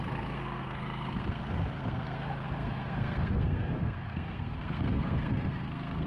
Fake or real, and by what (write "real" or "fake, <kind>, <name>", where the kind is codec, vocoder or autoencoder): fake, codec, SNAC